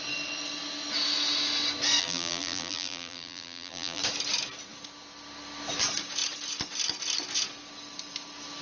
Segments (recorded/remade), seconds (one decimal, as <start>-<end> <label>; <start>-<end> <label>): 0.0-2.0 recorded; 2.0-4.0 remade; 4.0-8.6 recorded